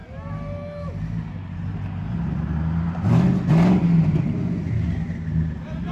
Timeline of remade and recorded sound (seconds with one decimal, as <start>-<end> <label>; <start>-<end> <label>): 0.0-5.9 recorded